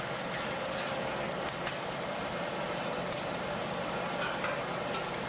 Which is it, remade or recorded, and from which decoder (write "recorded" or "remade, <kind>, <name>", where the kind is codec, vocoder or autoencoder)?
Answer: recorded